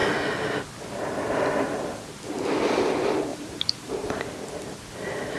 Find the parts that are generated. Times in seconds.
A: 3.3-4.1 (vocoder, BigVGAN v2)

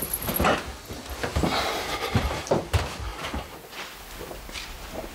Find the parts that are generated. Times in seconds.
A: 1.3-2.5 (vocoder, BigVGAN v2); 3.1-3.8